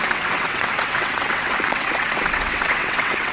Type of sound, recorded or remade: remade